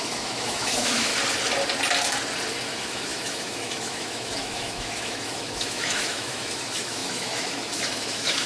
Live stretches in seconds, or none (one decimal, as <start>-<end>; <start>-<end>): 1.1-2.7

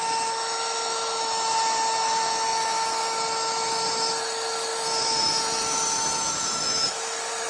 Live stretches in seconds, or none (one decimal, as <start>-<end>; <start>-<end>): none

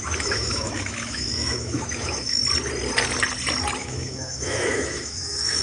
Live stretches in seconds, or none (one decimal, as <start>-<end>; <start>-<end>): 2.4-3.8

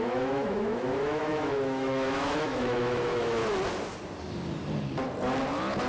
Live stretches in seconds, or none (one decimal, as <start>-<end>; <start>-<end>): 3.4-5.9

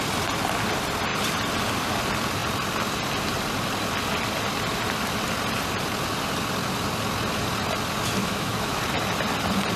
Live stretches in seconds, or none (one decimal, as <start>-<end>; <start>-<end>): 0.0-8.2; 8.8-9.8

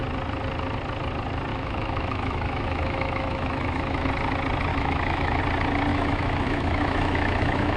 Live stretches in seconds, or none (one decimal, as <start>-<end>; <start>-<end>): 0.0-1.5; 4.1-4.7; 5.4-5.9

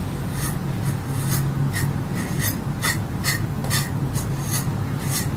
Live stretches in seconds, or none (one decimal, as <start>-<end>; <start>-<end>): 0.0-5.4